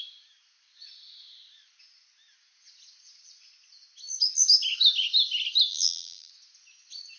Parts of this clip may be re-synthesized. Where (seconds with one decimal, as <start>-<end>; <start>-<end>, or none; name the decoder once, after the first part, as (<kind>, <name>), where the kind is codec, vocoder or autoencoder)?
5.7-6.3 (vocoder, BigVGAN v2)